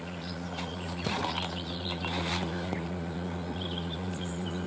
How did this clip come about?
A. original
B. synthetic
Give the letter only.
B